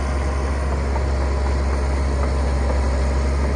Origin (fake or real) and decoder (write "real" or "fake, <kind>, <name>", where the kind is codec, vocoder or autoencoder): real